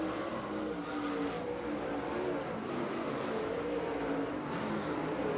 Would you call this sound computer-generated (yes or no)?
no